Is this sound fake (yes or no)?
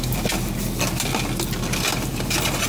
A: no